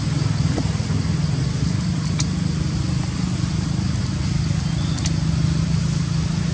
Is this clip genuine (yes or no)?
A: yes